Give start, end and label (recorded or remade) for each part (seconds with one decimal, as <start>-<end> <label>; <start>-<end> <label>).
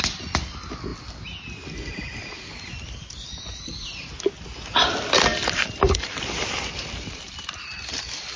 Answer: 0.0-5.3 recorded; 5.3-8.0 remade; 8.0-8.4 recorded